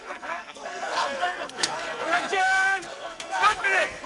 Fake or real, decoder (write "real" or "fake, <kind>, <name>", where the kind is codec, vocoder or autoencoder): fake, codec, SNAC